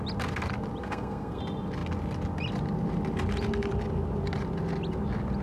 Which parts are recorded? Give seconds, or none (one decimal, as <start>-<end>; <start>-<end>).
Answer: 0.0-0.8; 1.4-5.4